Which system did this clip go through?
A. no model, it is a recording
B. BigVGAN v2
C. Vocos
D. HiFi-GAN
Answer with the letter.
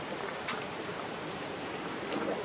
B